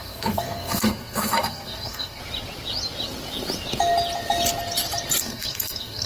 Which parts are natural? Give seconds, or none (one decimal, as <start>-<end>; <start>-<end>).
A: 2.2-5.2